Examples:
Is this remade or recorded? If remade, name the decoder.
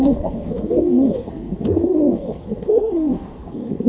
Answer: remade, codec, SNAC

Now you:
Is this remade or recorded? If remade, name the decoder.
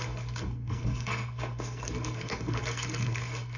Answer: remade, codec, SNAC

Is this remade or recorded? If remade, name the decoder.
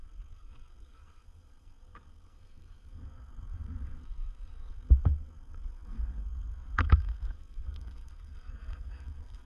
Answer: remade, codec, SNAC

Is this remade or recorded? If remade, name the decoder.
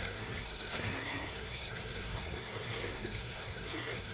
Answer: remade, codec, SNAC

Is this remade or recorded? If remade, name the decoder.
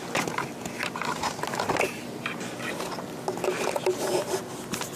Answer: recorded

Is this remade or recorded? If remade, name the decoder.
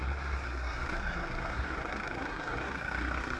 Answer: remade, codec, SNAC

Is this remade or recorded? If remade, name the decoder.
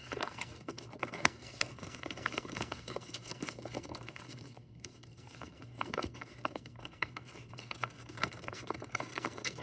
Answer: remade, codec, SNAC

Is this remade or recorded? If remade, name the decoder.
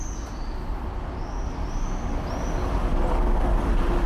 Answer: recorded